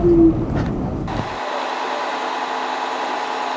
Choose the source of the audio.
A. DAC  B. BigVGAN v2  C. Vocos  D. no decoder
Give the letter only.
D